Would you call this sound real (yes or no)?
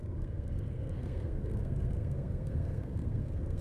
no